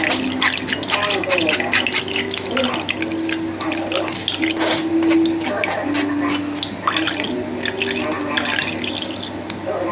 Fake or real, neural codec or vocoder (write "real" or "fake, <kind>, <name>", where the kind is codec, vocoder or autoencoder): real